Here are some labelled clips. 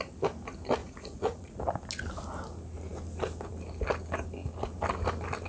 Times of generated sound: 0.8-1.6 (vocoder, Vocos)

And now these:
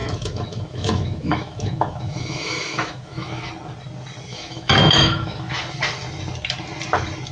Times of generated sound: 0.0-3.5 (autoencoder, DAC-VAE); 4.3-5.6